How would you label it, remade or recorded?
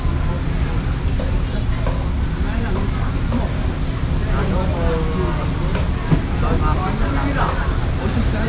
recorded